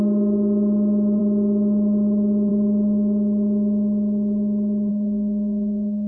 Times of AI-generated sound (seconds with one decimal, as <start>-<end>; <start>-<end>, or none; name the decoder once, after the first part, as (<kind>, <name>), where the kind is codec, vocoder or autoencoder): 4.9-6.1 (codec, SNAC)

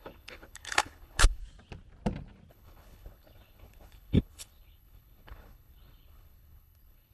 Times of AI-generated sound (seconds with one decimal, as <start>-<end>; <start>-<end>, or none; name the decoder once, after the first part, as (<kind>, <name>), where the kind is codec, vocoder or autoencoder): 0.0-1.4 (codec, HILCodec); 2.5-7.1

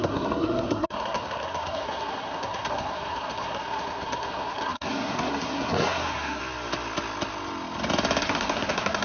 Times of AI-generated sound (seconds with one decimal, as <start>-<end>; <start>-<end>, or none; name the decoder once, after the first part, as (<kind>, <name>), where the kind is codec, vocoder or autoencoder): 0.0-6.4 (codec, SNAC); 8.2-9.0

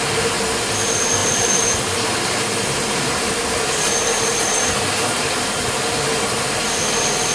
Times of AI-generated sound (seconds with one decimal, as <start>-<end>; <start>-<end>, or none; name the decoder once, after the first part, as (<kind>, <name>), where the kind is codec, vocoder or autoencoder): 1.2-5.6 (vocoder, BigVGAN v2)

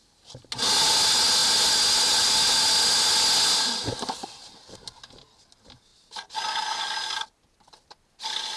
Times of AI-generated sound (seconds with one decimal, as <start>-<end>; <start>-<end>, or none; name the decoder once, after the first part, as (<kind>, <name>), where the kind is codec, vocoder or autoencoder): none

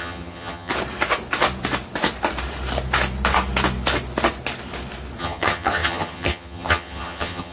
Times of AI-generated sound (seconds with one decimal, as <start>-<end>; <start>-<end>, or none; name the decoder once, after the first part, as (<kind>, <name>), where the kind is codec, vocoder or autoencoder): 0.0-0.7 (vocoder, HiFi-GAN); 5.2-7.5

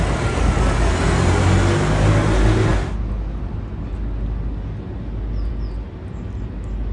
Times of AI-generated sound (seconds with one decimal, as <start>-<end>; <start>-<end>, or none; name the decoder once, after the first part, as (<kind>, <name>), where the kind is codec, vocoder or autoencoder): none

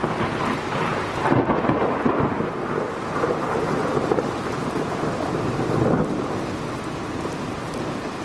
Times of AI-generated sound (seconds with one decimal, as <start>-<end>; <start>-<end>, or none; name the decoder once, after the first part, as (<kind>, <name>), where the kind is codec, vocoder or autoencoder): 1.8-6.0 (vocoder, BigVGAN v2); 7.5-8.2